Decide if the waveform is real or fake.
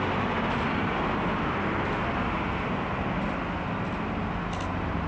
real